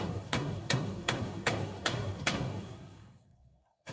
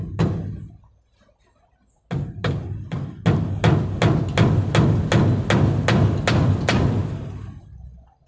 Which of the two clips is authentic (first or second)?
second